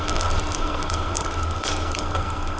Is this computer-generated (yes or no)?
yes